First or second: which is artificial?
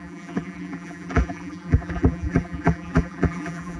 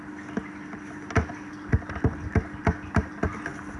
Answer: first